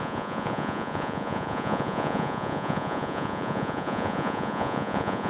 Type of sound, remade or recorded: remade